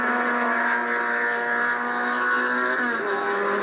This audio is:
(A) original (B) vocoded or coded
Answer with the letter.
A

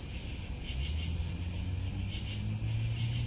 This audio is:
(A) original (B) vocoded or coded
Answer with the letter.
A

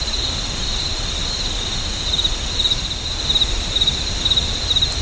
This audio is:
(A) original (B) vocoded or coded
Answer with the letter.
A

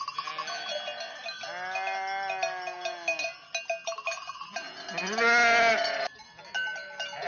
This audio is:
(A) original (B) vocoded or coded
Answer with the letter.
A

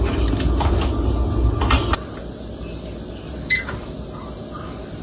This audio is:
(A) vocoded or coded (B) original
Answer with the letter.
B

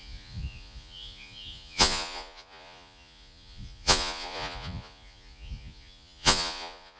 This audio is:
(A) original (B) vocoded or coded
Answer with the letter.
B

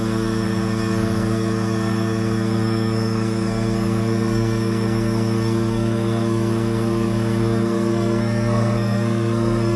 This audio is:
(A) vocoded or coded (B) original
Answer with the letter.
A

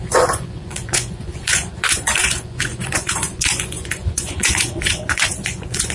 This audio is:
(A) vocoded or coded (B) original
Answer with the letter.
A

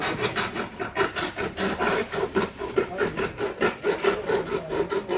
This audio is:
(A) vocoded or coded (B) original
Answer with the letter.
A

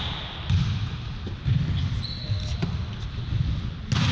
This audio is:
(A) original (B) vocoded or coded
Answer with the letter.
A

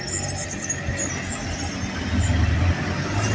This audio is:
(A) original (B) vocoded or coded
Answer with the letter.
A